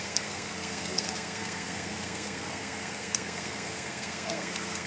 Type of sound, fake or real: fake